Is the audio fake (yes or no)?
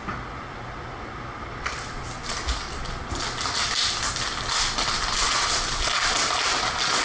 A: no